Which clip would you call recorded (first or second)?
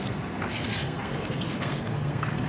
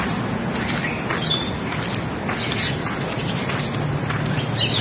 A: second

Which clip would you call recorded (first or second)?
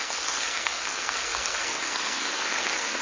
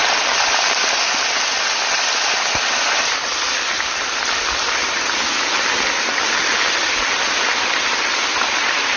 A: second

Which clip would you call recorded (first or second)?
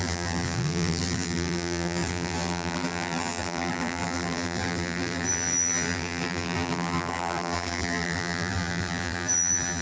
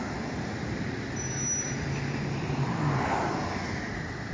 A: second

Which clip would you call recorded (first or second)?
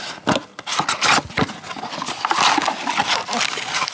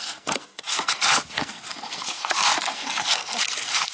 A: first